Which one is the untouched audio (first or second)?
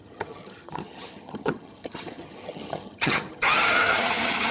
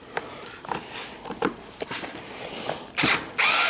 second